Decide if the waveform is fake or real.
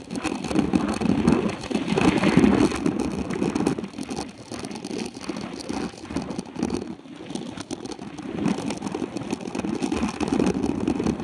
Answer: real